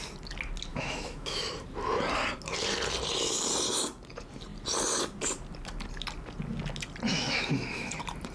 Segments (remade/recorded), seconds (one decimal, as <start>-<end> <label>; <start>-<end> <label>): 0.0-0.7 recorded; 0.7-1.4 remade; 1.4-7.1 recorded; 7.1-7.9 remade; 7.9-8.3 recorded